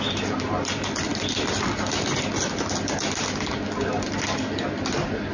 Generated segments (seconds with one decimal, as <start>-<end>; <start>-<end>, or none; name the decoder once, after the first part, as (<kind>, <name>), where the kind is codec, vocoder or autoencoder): none